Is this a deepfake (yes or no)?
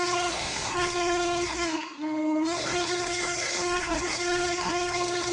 yes